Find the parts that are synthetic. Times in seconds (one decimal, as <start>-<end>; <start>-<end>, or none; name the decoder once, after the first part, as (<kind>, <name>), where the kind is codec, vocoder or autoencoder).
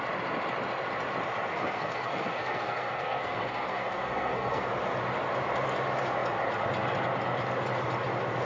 1.5-4.7 (codec, SNAC)